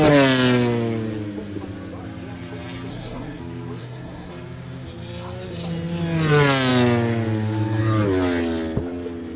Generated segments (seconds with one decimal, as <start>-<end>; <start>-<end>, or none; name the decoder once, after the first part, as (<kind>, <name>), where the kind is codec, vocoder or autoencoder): 2.9-3.4 (codec, SNAC); 3.8-4.3